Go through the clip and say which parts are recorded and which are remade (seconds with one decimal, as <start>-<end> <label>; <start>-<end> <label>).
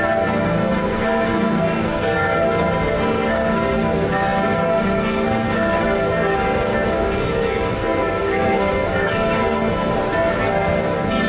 0.0-9.9 remade; 9.9-10.4 recorded; 10.4-11.3 remade